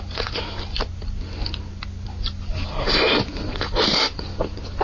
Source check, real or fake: real